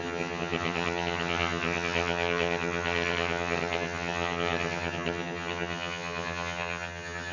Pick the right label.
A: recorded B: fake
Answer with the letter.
B